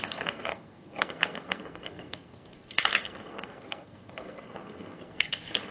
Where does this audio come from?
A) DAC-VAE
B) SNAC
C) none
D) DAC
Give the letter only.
B